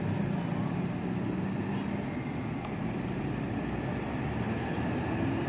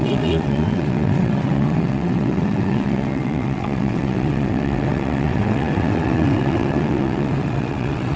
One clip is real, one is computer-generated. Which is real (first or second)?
first